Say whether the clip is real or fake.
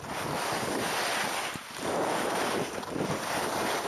real